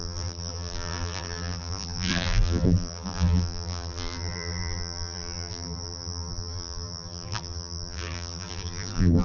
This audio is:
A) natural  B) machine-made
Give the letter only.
B